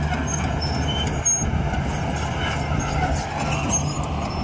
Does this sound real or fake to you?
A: real